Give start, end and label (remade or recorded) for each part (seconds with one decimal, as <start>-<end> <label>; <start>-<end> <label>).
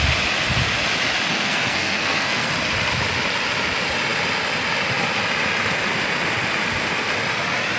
0.0-1.3 recorded; 1.3-2.5 remade; 2.5-7.8 recorded